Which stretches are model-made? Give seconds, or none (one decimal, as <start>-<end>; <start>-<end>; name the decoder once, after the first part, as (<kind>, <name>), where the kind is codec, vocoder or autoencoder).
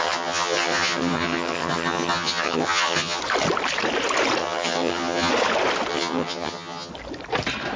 0.0-3.2 (vocoder, HiFi-GAN); 4.4-5.3; 5.9-6.9